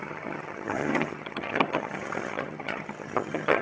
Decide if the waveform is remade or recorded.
remade